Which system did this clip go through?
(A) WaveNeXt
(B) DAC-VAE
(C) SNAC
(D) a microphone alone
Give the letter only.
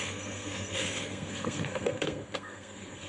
C